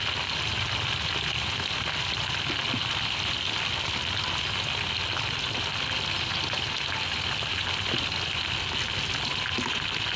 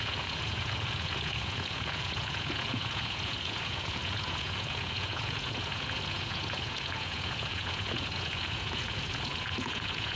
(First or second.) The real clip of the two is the first